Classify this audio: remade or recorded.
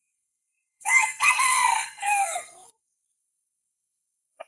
remade